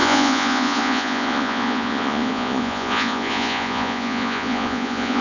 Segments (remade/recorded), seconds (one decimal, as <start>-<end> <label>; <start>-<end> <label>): 0.0-5.2 remade